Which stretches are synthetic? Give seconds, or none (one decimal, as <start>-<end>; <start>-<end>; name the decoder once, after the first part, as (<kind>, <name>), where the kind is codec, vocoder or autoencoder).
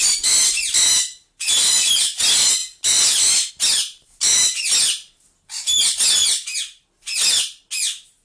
none